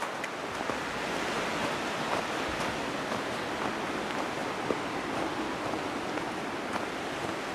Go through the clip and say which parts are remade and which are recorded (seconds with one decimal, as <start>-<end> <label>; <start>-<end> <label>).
0.0-7.5 recorded